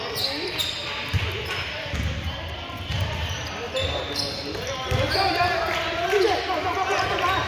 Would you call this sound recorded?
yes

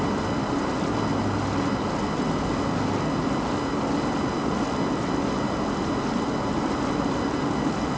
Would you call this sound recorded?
yes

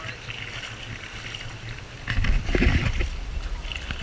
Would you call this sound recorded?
yes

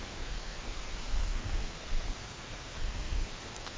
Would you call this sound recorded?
no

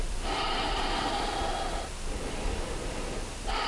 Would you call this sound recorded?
yes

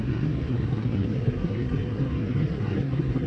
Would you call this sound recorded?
no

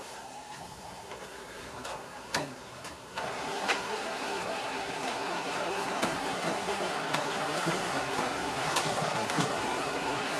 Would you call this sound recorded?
no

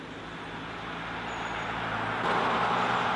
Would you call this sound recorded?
yes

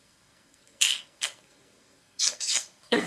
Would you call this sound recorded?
no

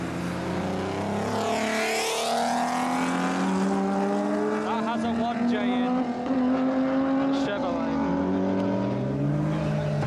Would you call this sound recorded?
yes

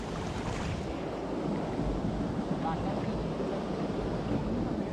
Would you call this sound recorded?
yes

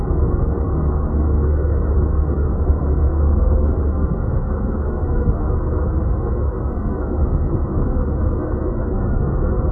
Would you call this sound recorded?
no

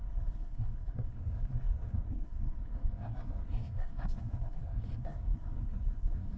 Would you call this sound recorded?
no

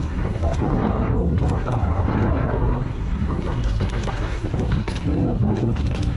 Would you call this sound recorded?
no